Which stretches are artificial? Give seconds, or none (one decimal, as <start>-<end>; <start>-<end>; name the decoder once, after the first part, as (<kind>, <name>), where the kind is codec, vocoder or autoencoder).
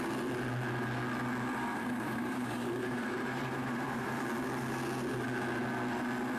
1.7-4.2 (vocoder, BigVGAN v2)